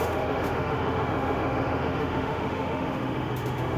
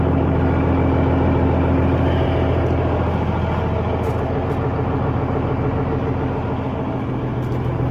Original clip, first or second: second